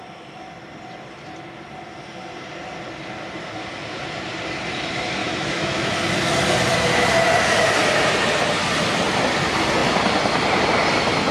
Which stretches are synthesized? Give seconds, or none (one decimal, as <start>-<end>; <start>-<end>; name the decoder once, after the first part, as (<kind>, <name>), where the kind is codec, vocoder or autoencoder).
5.2-5.9 (autoencoder, DAC-VAE)